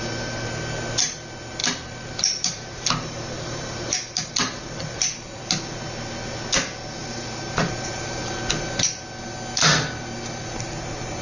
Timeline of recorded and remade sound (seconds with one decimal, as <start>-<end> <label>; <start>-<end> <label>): 0.0-1.6 recorded; 1.6-5.4 remade; 5.4-7.0 recorded; 7.0-8.3 remade; 8.3-11.2 recorded